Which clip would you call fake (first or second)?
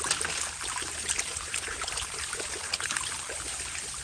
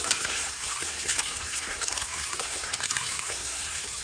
second